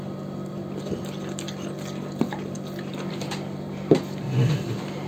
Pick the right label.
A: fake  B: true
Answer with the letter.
B